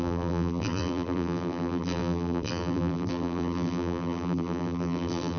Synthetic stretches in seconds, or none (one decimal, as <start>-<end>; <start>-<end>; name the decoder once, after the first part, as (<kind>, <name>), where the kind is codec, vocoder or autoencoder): 0.0-5.4 (vocoder, BigVGAN v2)